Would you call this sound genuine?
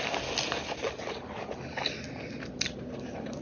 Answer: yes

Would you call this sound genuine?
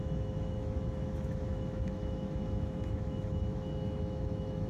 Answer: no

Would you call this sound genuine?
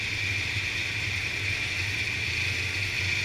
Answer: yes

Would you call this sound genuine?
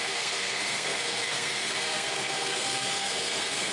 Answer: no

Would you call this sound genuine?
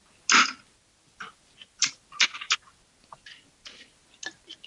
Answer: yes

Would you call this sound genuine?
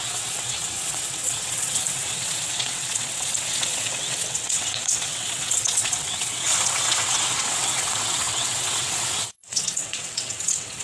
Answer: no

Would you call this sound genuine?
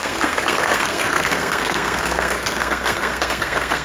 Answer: no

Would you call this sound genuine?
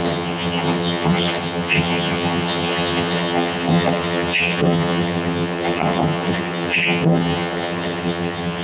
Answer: no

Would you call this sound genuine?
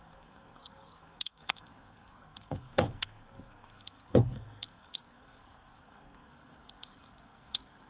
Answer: no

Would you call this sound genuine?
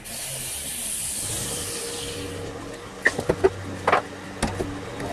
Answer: yes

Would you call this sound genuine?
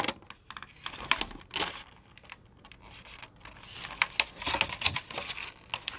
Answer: yes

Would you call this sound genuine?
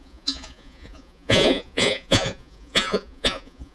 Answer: no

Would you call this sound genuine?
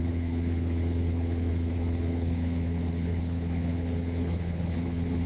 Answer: no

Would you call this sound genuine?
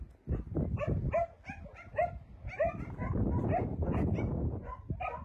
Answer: yes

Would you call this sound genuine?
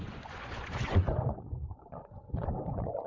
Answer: no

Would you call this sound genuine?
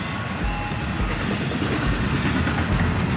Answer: yes